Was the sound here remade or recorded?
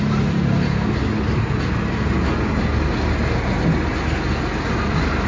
recorded